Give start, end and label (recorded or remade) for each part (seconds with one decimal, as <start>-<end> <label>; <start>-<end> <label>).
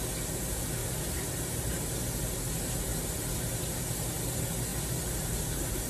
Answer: 0.0-0.8 recorded; 0.8-1.9 remade; 1.9-2.9 recorded; 2.9-4.2 remade; 4.2-4.7 recorded; 4.7-5.9 remade